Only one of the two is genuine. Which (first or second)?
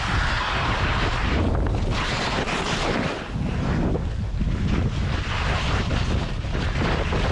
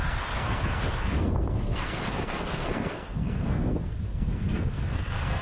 first